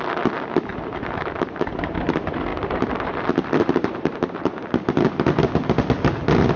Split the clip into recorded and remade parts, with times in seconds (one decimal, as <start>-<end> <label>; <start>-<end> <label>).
0.0-0.7 recorded; 0.7-1.7 remade; 1.7-2.5 recorded; 2.5-5.5 remade; 5.5-6.6 recorded